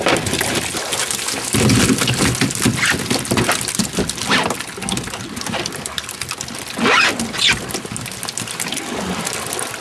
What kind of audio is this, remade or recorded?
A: recorded